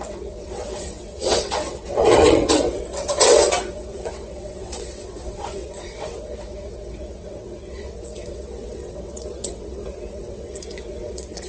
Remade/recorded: remade